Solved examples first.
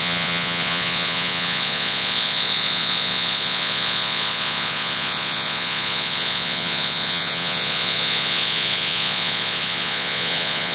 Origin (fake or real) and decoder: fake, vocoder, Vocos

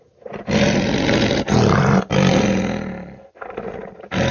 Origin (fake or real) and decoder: real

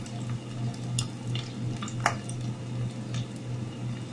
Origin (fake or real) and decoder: real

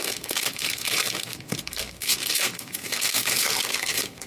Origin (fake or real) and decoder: fake, codec, SNAC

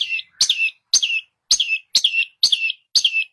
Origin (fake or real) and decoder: real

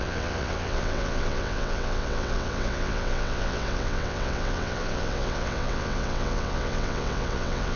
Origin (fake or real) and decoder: fake, vocoder, WaveNeXt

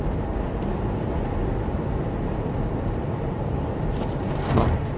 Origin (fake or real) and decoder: real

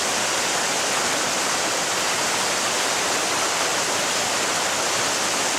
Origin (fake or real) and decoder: real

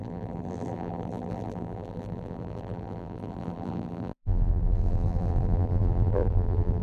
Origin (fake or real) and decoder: fake, vocoder, BigVGAN v2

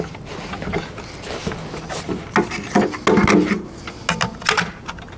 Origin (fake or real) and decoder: real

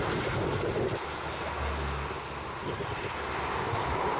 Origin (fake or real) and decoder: real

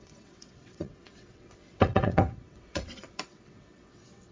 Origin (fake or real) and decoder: fake, vocoder, WaveNeXt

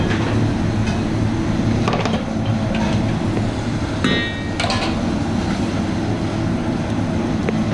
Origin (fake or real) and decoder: real